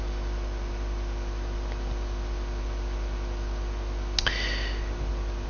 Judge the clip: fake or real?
real